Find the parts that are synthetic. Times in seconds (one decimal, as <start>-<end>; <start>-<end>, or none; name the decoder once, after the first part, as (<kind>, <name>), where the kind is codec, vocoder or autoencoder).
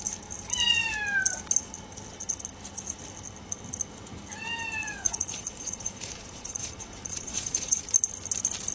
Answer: 4.8-7.8 (vocoder, Vocos)